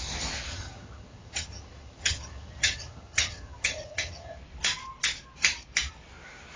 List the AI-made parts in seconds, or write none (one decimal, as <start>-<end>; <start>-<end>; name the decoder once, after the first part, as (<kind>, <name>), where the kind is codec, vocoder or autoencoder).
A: 0.5-4.4 (vocoder, HiFi-GAN)